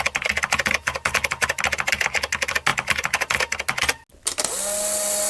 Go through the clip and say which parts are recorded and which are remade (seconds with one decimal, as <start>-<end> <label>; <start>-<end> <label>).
0.0-5.3 recorded